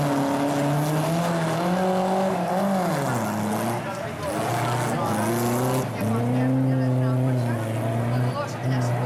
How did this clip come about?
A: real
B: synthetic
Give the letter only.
A